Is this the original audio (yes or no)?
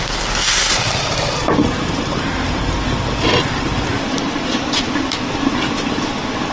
yes